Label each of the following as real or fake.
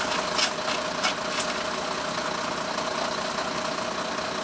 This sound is real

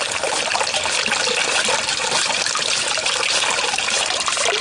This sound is real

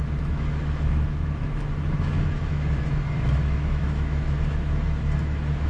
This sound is fake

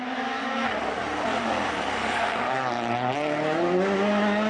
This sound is real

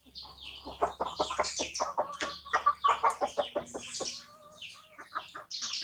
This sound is real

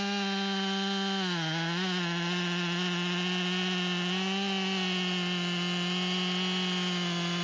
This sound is real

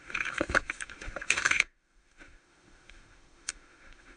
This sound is fake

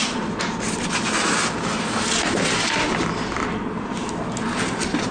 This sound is real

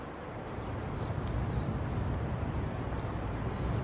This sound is real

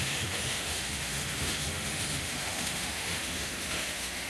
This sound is fake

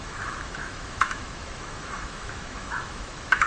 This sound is fake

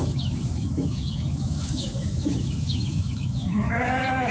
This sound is fake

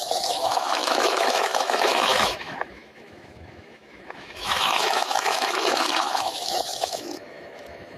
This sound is fake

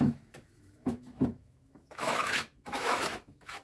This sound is fake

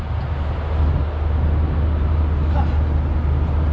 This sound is real